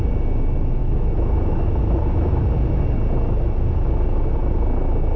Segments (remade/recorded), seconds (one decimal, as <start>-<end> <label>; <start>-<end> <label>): 0.0-0.8 recorded; 0.8-2.4 remade; 2.4-5.2 recorded